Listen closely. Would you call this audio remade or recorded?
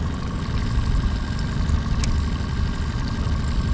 recorded